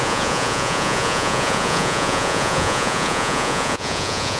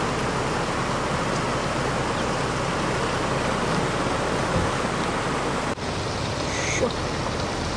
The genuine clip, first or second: second